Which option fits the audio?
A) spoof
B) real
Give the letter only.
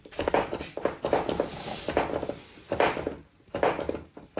B